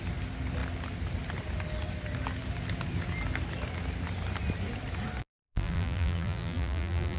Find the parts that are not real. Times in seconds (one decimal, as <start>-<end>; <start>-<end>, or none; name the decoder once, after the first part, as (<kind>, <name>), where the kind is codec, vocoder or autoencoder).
5.2-7.2 (vocoder, BigVGAN v2)

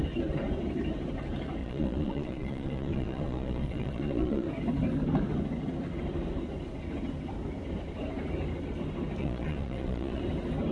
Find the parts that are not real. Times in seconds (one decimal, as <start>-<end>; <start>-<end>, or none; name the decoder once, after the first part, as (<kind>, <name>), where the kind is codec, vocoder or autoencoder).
1.6-4.5 (vocoder, Vocos); 9.2-10.2

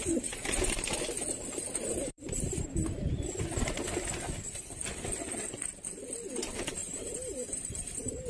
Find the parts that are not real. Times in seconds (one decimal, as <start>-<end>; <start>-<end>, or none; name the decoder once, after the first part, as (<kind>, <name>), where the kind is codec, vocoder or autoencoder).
1.9-2.6 (vocoder, BigVGAN v2); 6.8-8.3

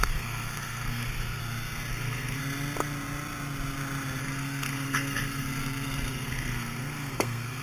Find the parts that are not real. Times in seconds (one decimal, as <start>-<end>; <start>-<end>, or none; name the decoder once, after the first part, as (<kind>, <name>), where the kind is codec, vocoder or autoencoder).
0.0-1.4 (codec, SNAC); 1.9-2.4; 4.2-7.6

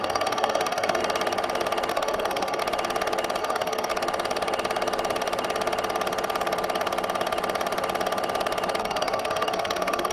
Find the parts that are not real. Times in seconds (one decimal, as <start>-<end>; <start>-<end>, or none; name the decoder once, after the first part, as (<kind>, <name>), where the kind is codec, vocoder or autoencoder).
0.0-1.0 (codec, SNAC); 1.9-2.6; 3.4-3.9; 8.8-10.1

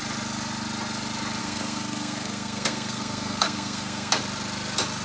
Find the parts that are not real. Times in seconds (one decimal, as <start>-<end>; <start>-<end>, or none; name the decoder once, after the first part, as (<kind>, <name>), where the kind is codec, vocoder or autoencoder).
1.4-4.2 (codec, SNAC)

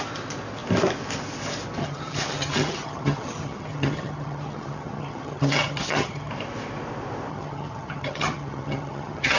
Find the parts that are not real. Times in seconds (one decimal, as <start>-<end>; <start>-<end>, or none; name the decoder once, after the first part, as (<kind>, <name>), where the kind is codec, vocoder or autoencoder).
1.8-6.3 (vocoder, HiFi-GAN); 7.3-9.4

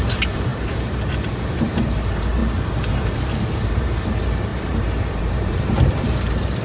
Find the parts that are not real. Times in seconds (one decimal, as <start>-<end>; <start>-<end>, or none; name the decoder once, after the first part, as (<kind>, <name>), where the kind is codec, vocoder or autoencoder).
0.0-2.4 (vocoder, BigVGAN v2); 2.9-6.6